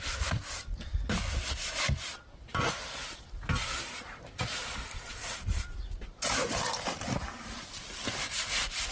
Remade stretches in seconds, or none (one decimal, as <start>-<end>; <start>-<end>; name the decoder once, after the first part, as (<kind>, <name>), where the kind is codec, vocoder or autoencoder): 0.0-0.9 (vocoder, BigVGAN v2); 1.5-8.9